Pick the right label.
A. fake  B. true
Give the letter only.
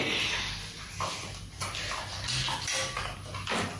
B